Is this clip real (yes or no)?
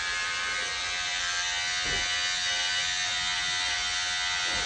yes